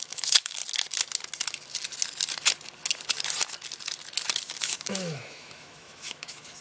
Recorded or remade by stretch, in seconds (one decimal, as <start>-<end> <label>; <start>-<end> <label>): 0.0-0.6 remade; 0.6-4.6 recorded; 4.6-6.6 remade

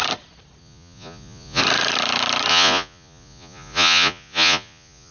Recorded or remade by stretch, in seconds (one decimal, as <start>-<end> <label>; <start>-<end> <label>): 0.0-0.6 recorded; 0.6-1.6 remade; 1.6-2.5 recorded; 2.5-5.1 remade

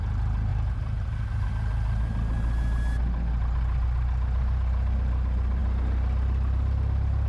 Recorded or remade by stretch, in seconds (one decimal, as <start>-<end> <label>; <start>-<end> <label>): 0.0-0.5 recorded; 0.5-1.5 remade; 1.5-7.3 recorded

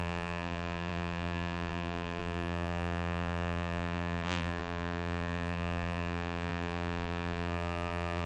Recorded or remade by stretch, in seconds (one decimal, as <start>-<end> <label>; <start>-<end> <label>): 0.0-8.3 remade

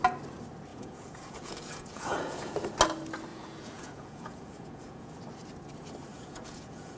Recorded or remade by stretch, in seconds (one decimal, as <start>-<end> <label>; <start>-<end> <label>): 0.0-0.7 recorded; 0.7-2.5 remade; 2.5-3.3 recorded; 3.3-5.2 remade; 5.2-6.1 recorded; 6.1-7.0 remade